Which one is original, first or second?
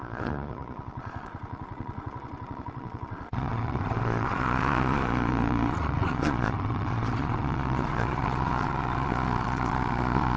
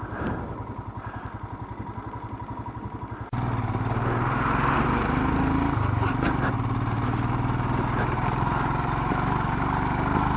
second